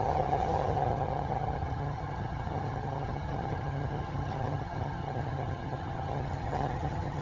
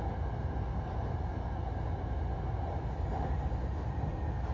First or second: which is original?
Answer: second